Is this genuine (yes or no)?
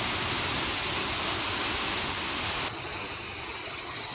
yes